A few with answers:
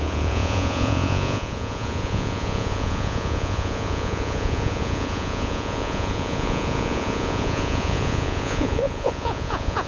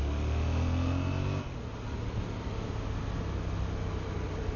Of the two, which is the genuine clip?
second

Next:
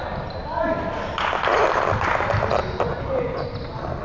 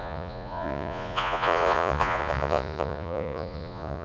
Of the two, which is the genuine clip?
first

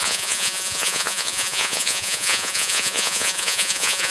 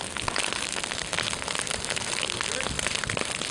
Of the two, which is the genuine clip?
second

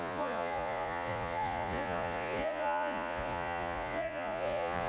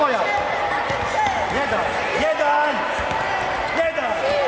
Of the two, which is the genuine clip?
second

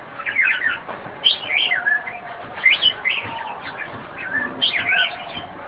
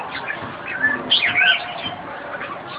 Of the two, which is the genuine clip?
second